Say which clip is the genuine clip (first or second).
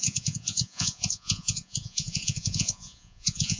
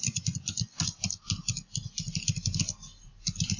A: second